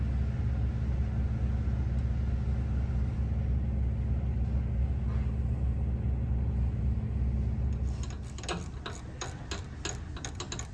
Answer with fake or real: real